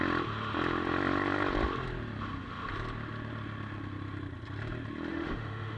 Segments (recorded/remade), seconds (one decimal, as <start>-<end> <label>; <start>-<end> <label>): 0.0-5.1 recorded; 5.1-5.8 remade